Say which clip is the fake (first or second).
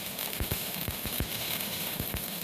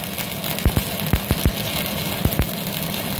first